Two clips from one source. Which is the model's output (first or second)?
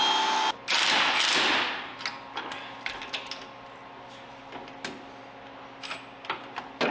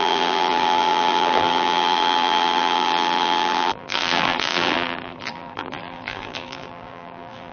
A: second